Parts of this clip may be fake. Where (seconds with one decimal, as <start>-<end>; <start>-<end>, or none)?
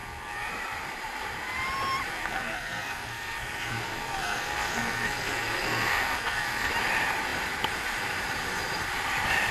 0.0-0.5; 2.1-6.7